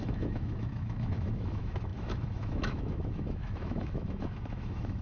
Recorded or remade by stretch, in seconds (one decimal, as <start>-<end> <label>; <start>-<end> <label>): 0.0-5.0 remade